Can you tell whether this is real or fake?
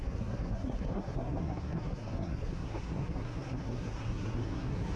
fake